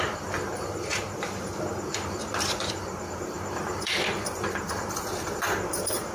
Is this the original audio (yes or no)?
no